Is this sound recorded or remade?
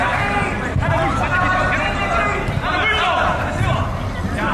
recorded